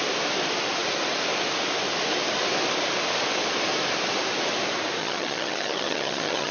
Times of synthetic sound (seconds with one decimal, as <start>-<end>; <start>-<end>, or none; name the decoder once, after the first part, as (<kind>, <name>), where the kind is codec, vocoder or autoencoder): 5.0-6.5 (vocoder, HiFi-GAN)